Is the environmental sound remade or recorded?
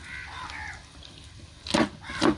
recorded